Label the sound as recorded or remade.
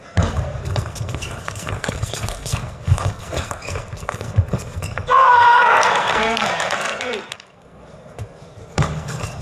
remade